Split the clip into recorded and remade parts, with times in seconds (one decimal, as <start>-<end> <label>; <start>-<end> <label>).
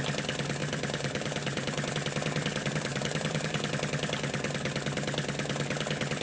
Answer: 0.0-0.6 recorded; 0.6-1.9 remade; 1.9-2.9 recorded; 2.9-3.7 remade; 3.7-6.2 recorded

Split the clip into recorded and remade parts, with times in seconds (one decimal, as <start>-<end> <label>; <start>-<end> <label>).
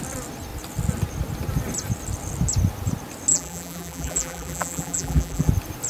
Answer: 0.0-3.3 recorded; 3.3-5.5 remade; 5.5-5.9 recorded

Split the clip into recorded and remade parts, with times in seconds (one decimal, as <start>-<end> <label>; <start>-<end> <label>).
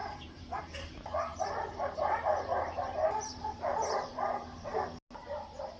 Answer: 0.0-4.7 remade; 4.7-5.8 recorded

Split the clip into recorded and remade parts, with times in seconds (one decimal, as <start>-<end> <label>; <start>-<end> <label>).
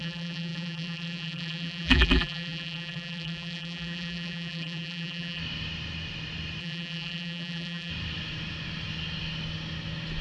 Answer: 0.0-5.4 remade; 5.4-6.6 recorded; 6.6-7.9 remade; 7.9-10.2 recorded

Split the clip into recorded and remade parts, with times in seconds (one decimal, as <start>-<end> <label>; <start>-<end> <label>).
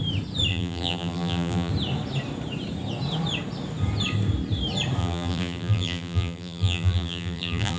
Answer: 0.0-0.5 recorded; 0.5-1.7 remade; 1.7-5.0 recorded; 5.0-7.8 remade